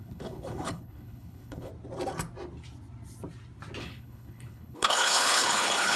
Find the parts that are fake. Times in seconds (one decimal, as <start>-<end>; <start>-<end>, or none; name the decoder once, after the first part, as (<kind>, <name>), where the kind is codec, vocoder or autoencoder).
0.0-1.7 (codec, HILCodec); 3.8-6.0